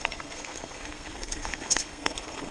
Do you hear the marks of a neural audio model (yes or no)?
yes